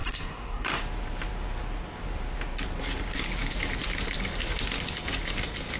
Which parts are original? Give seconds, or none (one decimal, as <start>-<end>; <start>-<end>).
0.8-5.8